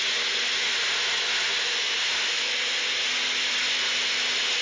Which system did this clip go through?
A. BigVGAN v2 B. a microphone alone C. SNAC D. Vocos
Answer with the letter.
B